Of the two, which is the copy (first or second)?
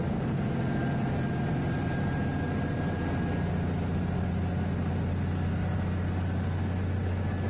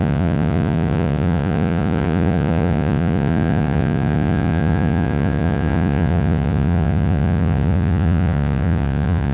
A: second